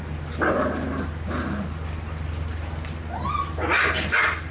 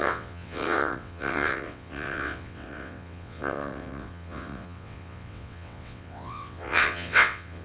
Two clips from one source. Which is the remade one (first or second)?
second